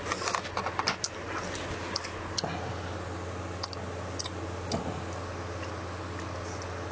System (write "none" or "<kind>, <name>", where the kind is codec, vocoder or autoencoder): none